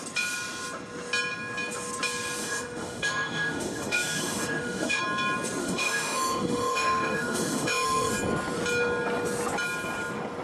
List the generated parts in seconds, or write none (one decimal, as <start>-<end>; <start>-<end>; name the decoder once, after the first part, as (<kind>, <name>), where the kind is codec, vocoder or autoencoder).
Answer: 2.4-5.0 (autoencoder, DAC-VAE); 5.6-8.1